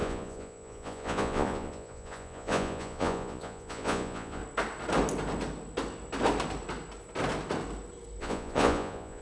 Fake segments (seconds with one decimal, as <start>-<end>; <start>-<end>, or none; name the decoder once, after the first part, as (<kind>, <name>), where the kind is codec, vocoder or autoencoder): 0.0-4.4 (vocoder, Vocos); 8.2-9.2